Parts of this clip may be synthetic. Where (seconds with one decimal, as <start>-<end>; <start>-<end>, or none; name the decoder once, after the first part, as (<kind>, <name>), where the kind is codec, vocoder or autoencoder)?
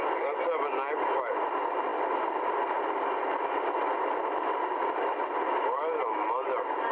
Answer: 1.9-6.0 (vocoder, BigVGAN v2)